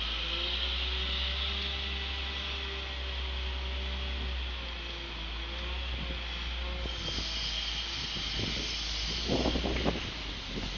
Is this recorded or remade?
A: recorded